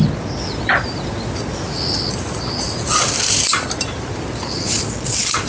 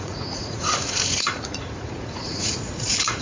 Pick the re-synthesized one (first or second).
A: second